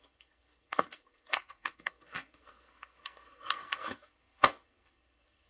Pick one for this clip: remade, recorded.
remade